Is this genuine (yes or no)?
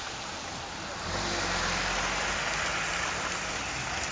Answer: yes